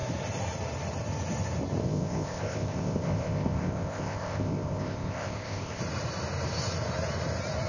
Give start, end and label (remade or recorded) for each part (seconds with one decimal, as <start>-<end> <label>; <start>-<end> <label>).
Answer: 0.0-1.8 recorded; 1.8-5.8 remade; 5.8-7.7 recorded